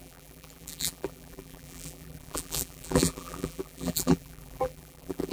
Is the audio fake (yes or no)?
yes